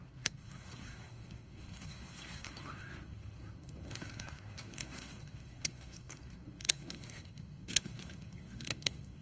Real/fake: fake